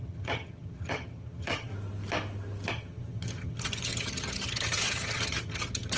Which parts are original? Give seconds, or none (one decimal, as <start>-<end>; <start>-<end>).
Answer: 1.7-2.7